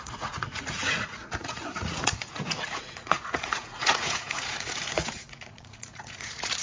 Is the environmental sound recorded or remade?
remade